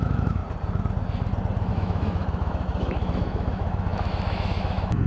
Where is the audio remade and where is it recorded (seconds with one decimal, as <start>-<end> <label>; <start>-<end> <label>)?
0.0-0.4 remade; 0.4-1.7 recorded; 1.7-5.1 remade